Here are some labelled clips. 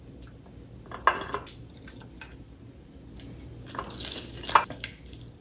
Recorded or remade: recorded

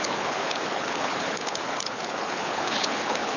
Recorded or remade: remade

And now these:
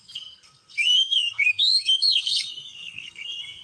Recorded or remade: remade